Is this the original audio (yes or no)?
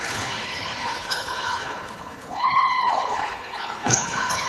no